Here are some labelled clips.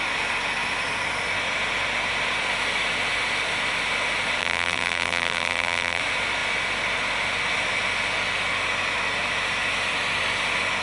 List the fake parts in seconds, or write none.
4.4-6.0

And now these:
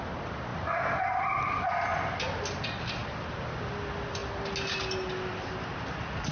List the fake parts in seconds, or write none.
0.5-1.3; 3.0-3.6